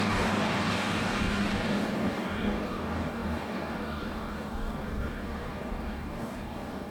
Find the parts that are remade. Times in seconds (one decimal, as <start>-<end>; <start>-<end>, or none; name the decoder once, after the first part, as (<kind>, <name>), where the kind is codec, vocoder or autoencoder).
0.0-6.9 (codec, DAC)